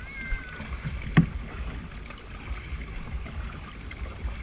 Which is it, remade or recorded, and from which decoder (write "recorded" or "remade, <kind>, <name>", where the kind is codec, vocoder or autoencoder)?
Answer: recorded